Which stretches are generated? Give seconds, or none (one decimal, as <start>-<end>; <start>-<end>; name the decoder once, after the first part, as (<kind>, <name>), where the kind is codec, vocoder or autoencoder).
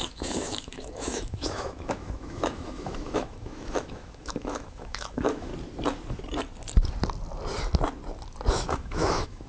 0.0-5.5 (autoencoder, DAC-VAE); 8.5-9.5